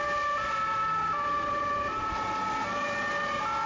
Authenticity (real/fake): real